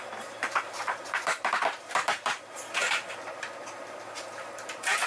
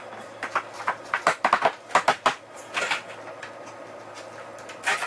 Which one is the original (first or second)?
second